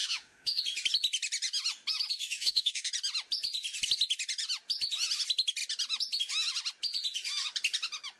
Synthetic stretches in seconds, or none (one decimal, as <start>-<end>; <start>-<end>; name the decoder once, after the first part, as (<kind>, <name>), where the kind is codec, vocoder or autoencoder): 0.0-0.6 (autoencoder, DAC-VAE); 2.2-2.9